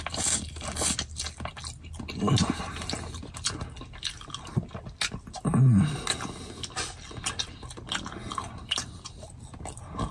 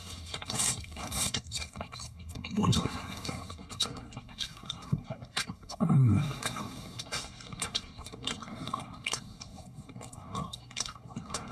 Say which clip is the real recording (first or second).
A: first